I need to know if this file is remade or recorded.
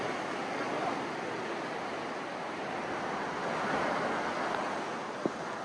recorded